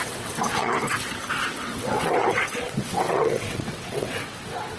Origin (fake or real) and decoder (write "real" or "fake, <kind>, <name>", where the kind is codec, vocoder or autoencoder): fake, vocoder, WaveNeXt